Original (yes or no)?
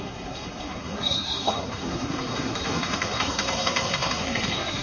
no